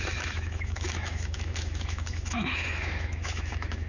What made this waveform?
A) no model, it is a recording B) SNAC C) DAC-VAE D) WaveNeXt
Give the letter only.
C